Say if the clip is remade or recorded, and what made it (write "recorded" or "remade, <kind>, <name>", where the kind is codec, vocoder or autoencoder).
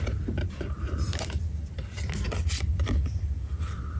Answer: recorded